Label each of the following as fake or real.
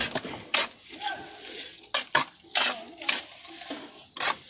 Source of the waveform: real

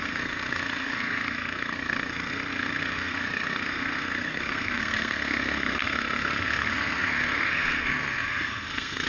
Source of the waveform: fake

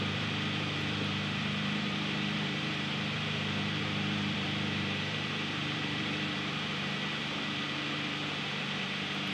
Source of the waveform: fake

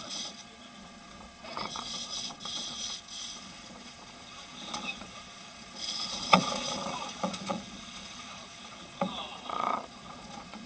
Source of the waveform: fake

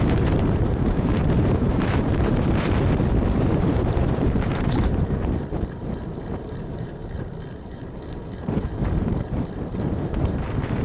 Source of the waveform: fake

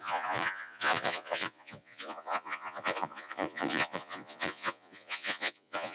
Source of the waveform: fake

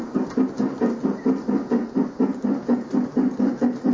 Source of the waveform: real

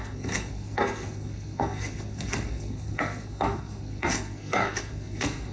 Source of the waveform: fake